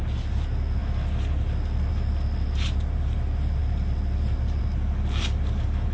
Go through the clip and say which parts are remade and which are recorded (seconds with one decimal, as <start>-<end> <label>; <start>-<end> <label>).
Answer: 0.0-5.9 recorded